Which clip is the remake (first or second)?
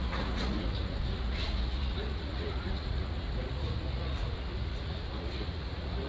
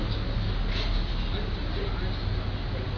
first